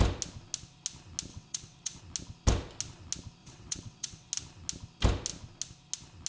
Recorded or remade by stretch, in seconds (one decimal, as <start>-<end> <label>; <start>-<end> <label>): 0.0-1.3 recorded; 1.3-2.0 remade; 2.0-3.4 recorded; 3.4-4.3 remade; 4.3-6.3 recorded